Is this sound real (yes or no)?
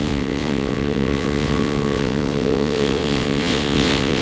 no